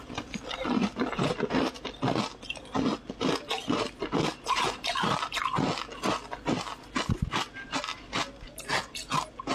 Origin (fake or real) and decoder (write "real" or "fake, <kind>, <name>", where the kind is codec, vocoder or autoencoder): real